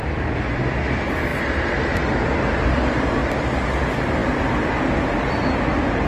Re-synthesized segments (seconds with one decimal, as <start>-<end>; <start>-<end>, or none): none